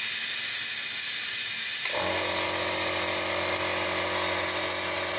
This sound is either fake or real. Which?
real